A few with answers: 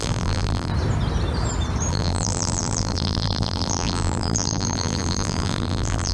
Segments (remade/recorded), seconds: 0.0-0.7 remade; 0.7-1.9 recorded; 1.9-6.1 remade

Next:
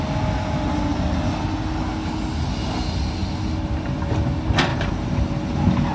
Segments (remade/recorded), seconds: 0.0-4.7 recorded; 4.7-5.3 remade; 5.3-5.9 recorded

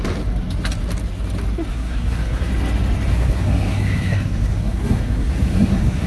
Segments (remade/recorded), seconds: 0.0-1.7 recorded; 1.7-2.5 remade; 2.5-3.1 recorded; 3.1-6.1 remade

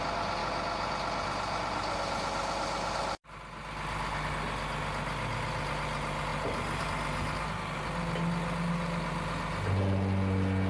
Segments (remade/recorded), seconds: 0.0-10.7 recorded

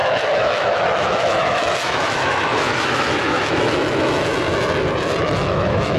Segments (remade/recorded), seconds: 0.0-4.3 remade; 4.3-5.2 recorded; 5.2-6.0 remade

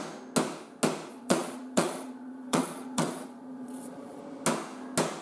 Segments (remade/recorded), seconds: 0.0-1.1 recorded; 1.1-4.2 remade; 4.2-5.2 recorded